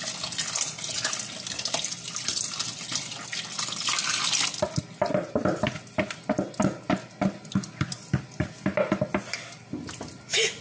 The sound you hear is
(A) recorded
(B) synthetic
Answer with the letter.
A